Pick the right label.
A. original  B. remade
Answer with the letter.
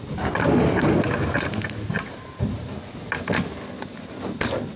A